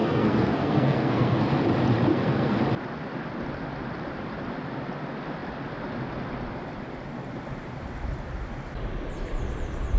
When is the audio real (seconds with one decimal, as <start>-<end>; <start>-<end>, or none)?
1.6-2.1; 2.6-10.0